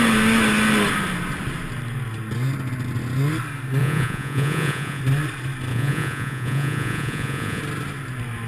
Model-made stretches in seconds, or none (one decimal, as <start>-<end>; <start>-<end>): 3.8-5.0; 5.7-7.6